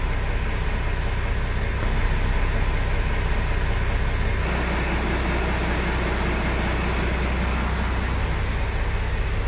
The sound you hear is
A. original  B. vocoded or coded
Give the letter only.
A